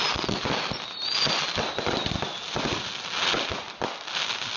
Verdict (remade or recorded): recorded